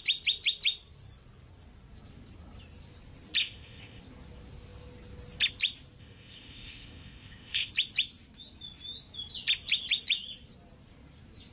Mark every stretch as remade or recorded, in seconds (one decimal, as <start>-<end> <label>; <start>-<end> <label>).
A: 0.0-3.4 recorded; 3.4-4.0 remade; 4.0-6.0 recorded; 6.0-7.7 remade; 7.7-11.5 recorded